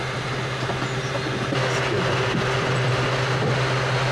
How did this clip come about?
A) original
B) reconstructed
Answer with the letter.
A